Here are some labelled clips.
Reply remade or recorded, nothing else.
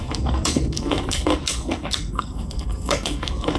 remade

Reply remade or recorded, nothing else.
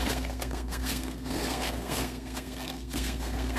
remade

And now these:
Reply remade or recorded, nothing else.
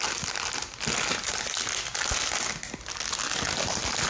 recorded